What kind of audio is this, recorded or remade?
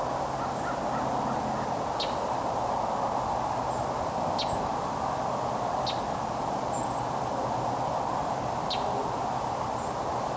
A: recorded